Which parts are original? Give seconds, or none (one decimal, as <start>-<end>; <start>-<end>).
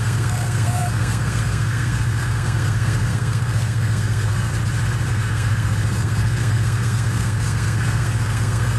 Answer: 4.5-5.1